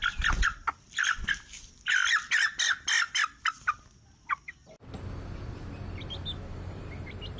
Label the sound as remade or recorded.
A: recorded